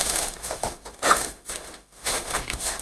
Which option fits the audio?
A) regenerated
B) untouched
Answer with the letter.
A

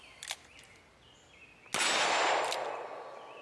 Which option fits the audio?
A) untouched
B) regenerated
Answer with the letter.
A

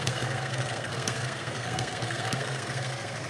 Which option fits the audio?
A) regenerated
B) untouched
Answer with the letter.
A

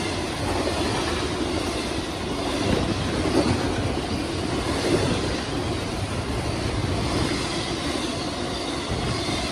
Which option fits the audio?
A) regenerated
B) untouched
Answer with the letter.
B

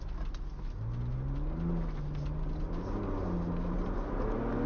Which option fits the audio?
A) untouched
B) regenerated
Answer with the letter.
A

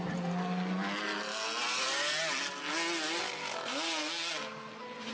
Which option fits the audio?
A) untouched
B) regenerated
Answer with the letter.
A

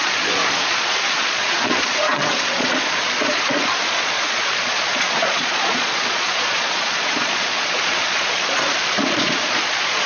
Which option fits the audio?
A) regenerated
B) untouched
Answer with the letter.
A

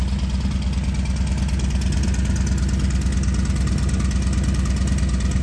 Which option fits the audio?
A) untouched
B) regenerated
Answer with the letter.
A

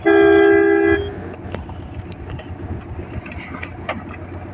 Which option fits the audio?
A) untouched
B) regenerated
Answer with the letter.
A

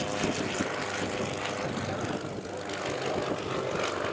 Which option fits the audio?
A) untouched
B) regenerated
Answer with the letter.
A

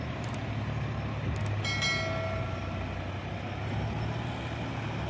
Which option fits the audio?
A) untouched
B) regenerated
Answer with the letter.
A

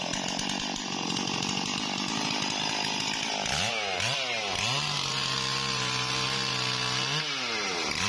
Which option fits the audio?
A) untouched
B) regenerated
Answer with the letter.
A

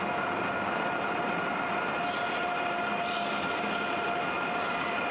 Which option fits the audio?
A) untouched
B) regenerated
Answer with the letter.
A